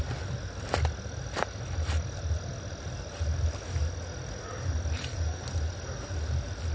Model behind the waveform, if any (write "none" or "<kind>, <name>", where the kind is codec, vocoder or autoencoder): none